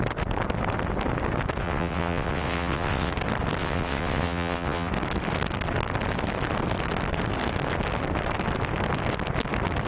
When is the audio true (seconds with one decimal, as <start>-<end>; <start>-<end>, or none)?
0.0-1.6; 3.1-3.6; 4.9-9.9

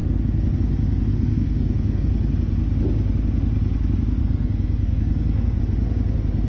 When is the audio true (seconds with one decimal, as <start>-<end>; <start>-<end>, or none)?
0.0-1.1; 2.1-4.2; 5.6-6.5

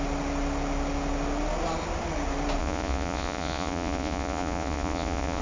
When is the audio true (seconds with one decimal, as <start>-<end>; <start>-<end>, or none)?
0.0-2.6